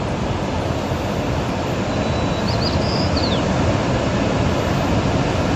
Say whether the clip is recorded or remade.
recorded